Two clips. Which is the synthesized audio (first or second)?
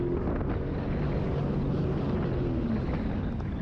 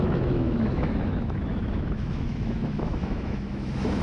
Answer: second